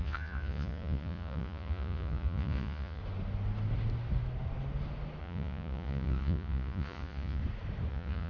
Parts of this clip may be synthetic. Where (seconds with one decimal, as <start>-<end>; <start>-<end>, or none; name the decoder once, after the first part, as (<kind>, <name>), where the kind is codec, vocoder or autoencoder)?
0.0-3.0 (vocoder, Vocos); 5.2-7.4; 7.9-8.3